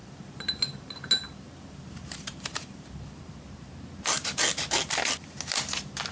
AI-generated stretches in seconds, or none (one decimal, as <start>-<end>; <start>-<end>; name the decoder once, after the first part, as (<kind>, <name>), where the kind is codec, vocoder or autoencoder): 0.0-3.7 (vocoder, BigVGAN v2)